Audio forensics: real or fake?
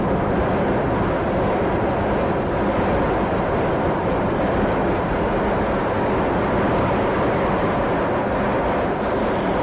real